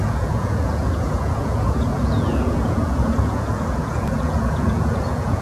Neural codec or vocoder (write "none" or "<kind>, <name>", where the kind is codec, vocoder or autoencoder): vocoder, Vocos